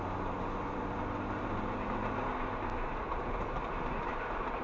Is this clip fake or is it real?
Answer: real